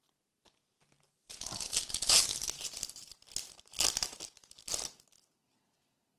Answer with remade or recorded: recorded